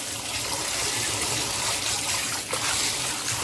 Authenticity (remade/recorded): recorded